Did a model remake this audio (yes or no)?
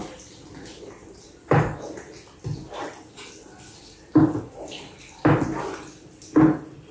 no